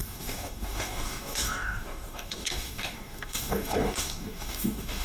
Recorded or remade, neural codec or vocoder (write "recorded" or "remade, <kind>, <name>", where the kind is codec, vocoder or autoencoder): remade, codec, DAC